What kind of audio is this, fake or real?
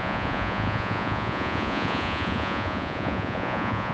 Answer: fake